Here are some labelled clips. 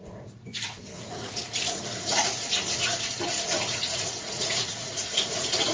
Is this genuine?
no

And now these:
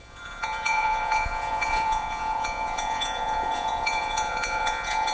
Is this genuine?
no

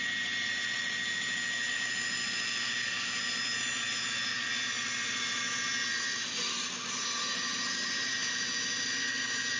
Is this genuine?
yes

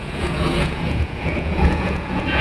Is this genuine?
no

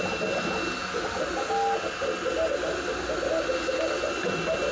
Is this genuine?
yes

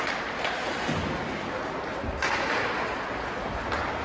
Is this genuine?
yes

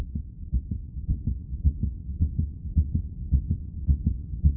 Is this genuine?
no